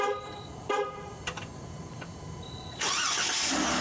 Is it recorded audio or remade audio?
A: remade